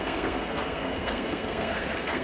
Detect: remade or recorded remade